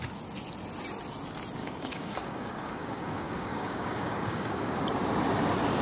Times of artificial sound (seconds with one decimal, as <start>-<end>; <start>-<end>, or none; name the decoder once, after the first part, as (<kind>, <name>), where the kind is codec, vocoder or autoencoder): 1.6-4.8 (codec, DAC)